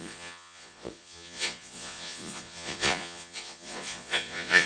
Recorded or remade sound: remade